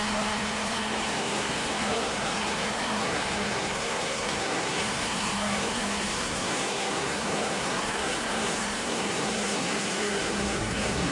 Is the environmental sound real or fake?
fake